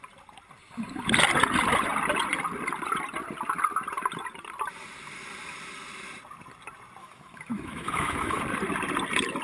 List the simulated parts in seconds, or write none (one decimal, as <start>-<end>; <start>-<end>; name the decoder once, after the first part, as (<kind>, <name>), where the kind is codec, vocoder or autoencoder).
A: 7.0-8.4 (autoencoder, DAC-VAE)